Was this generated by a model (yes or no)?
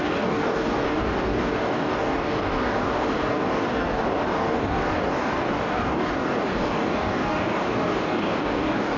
yes